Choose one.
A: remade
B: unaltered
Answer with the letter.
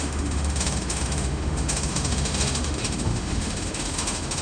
A